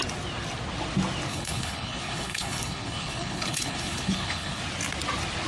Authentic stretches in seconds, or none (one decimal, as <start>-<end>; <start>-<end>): 0.0-1.3; 4.6-5.5